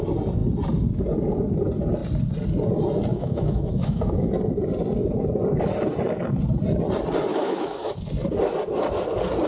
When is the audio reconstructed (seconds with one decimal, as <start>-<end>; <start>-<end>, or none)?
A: 3.1-4.3; 7.3-7.9